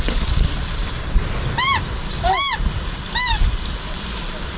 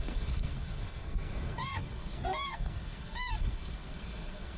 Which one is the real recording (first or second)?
first